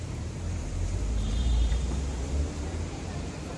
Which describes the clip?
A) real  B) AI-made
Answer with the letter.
B